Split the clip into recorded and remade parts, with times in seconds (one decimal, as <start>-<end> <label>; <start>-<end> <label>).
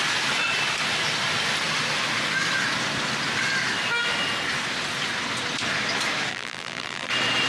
0.0-6.3 recorded; 6.3-7.1 remade; 7.1-7.5 recorded